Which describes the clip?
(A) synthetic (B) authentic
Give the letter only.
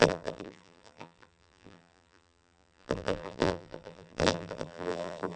A